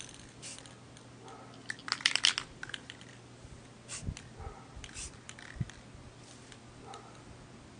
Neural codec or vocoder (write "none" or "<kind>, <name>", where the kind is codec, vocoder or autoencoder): none